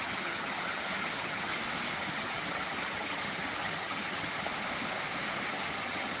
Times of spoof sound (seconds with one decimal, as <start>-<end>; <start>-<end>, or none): 0.0-1.5; 2.0-4.5; 5.5-6.2